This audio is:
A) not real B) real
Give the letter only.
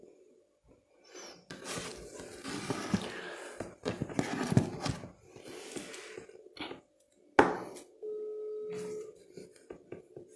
B